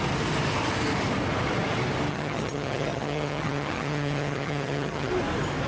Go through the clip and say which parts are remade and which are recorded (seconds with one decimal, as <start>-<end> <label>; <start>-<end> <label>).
0.0-2.1 recorded; 2.1-5.1 remade; 5.1-5.7 recorded